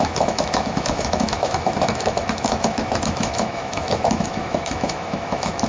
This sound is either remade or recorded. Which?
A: remade